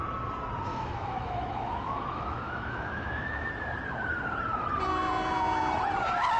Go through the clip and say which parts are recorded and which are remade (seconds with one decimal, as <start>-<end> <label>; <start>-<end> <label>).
0.0-0.7 recorded; 0.7-3.5 remade; 3.5-6.4 recorded